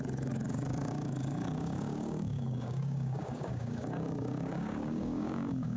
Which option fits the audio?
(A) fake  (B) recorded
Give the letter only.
A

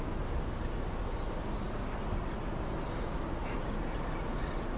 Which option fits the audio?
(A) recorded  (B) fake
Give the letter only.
A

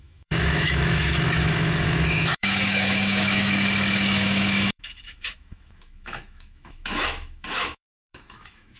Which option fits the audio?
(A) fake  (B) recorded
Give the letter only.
A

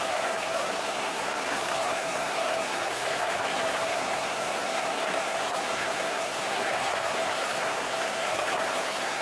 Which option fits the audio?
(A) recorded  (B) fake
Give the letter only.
B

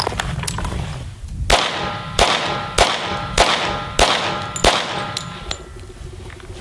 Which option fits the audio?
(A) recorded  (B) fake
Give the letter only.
A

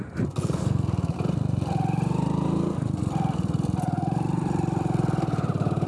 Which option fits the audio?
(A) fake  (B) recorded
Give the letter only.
A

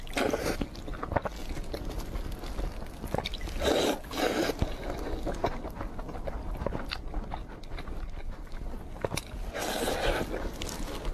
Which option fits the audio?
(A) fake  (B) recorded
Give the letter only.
B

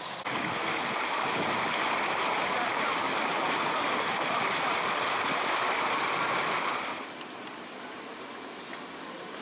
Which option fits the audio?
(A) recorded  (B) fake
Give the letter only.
A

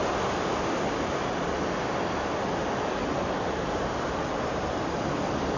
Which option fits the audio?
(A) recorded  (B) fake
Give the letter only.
A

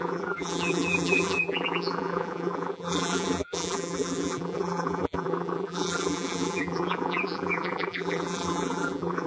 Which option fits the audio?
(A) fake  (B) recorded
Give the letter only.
A